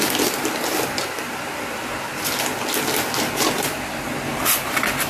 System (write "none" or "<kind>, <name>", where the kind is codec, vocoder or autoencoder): none